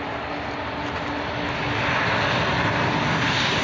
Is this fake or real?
real